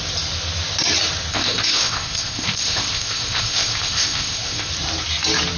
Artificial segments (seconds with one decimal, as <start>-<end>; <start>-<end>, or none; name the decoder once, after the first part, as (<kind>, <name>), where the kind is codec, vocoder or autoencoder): 1.3-4.7 (codec, ZipCodec)